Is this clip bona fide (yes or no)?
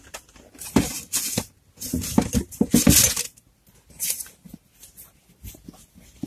yes